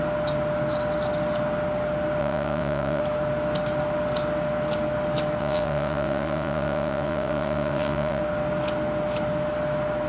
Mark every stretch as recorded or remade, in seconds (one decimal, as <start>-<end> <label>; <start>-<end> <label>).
0.0-2.2 recorded; 2.2-3.0 remade; 3.0-5.4 recorded; 5.4-8.2 remade; 8.2-10.1 recorded